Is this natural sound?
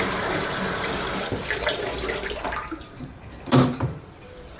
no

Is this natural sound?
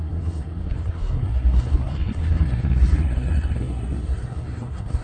no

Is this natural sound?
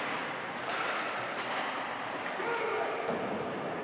no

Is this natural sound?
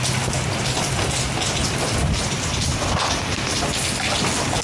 yes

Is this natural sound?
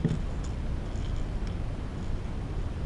yes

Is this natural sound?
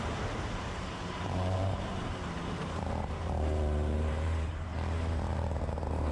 no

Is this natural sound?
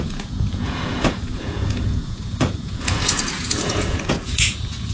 no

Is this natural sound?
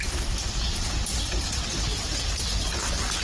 yes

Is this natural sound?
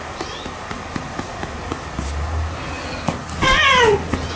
yes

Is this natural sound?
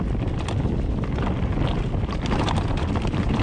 yes